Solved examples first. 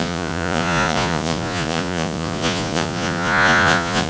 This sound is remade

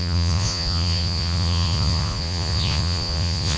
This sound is remade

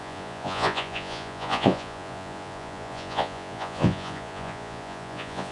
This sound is remade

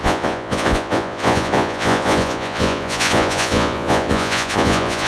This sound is remade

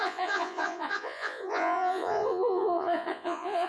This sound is remade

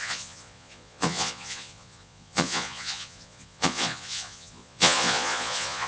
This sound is remade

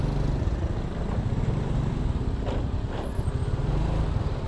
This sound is recorded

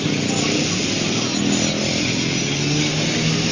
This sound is recorded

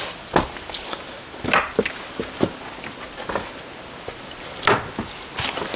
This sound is recorded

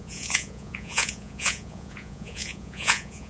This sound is remade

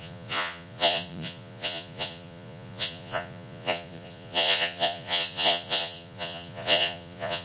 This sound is remade